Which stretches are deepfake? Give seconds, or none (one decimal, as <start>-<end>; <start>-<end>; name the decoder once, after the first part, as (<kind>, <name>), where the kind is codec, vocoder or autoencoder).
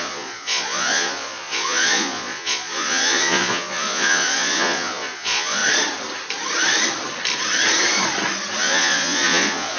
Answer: 0.0-5.6 (vocoder, Vocos); 8.6-9.8